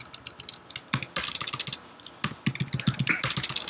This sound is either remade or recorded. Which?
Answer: recorded